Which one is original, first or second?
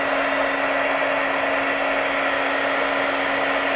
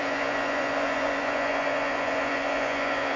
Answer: first